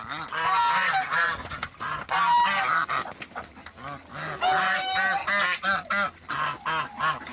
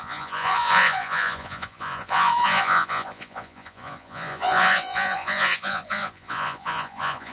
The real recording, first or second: first